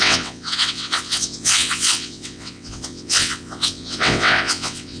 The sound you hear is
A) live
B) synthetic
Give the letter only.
B